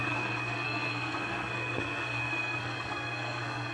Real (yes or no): no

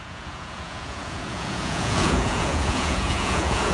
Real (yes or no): no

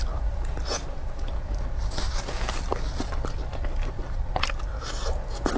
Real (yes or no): yes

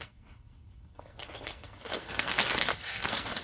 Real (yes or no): no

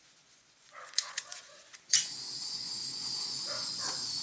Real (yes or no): no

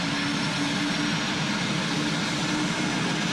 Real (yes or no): yes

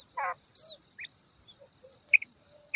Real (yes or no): yes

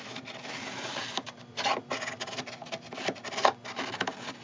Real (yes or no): yes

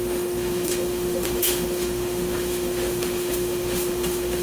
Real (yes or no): no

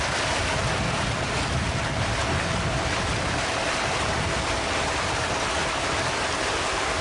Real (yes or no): yes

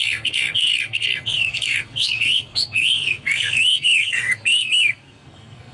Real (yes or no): no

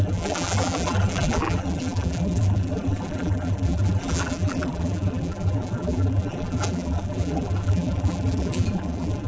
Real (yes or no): no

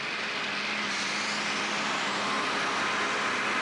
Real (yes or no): yes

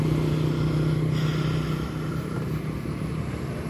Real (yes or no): yes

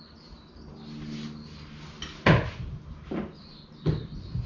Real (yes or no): yes